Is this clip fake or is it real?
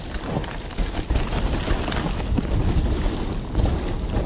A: real